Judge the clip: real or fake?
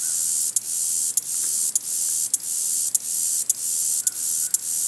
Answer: real